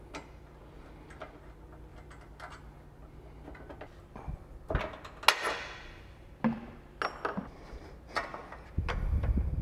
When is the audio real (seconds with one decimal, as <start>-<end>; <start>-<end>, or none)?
0.0-9.6